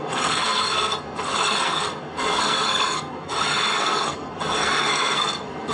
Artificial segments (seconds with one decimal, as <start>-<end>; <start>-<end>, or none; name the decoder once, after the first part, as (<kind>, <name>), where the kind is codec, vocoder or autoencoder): 0.0-5.7 (codec, SNAC)

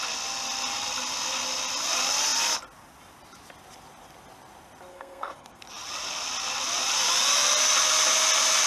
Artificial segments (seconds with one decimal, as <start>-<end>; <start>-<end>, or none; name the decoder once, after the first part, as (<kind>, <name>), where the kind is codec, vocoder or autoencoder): 4.9-5.6 (codec, SNAC)

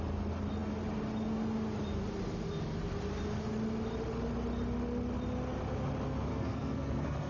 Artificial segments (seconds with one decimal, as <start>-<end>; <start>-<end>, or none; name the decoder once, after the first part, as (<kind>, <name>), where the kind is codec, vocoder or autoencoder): 6.3-7.3 (codec, SNAC)